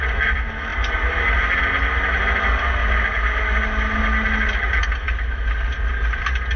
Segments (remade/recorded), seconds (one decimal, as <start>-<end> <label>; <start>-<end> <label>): 0.0-6.6 recorded